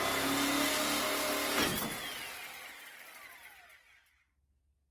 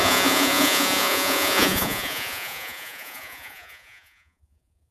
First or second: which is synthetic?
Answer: second